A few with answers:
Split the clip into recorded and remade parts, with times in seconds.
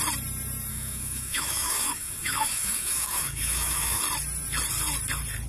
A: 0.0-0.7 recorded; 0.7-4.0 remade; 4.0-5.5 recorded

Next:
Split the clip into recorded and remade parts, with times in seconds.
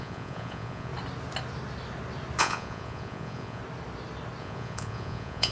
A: 0.0-0.9 remade; 0.9-2.4 recorded; 2.4-3.6 remade; 3.6-4.4 recorded; 4.4-5.5 remade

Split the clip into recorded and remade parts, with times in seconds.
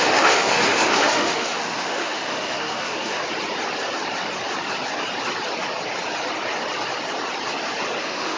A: 0.0-3.2 remade; 3.2-8.0 recorded; 8.0-8.4 remade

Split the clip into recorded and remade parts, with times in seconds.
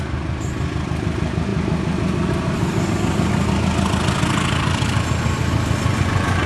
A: 0.0-5.9 recorded; 5.9-6.5 remade